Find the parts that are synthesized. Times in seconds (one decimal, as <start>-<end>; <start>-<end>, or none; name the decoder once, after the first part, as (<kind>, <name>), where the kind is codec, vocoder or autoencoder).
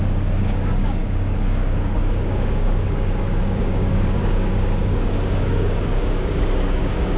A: 0.0-7.2 (codec, DAC)